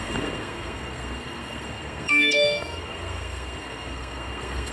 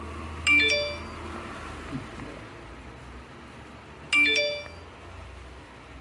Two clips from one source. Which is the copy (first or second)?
first